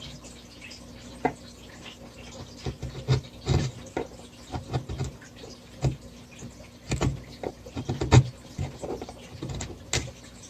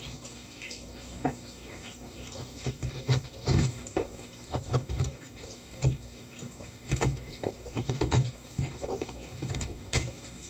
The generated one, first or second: second